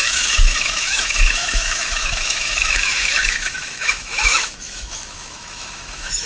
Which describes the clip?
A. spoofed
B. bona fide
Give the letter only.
A